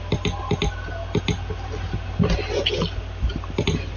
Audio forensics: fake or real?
real